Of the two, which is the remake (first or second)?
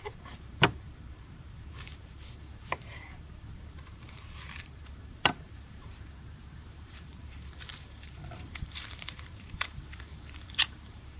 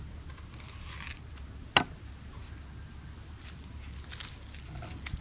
first